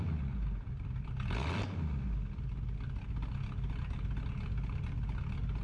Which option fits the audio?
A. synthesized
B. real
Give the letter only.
B